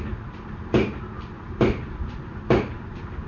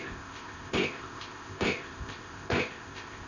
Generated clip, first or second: second